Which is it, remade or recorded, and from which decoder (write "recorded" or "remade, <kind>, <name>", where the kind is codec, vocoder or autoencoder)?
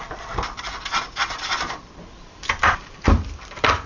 remade, vocoder, BigVGAN v2